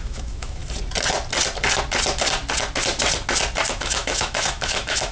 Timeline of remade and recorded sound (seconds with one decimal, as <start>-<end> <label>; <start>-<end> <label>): 0.0-0.6 remade; 0.6-3.7 recorded; 3.7-5.1 remade